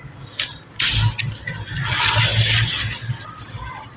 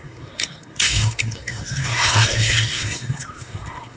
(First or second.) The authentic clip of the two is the first